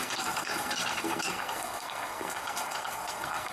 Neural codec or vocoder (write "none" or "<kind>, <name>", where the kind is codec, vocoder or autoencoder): codec, SNAC